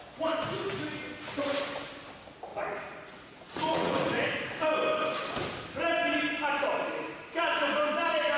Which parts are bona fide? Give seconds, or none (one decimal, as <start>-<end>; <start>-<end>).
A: 0.0-2.5; 4.1-8.4